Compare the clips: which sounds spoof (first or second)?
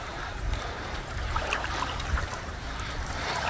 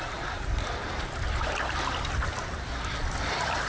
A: first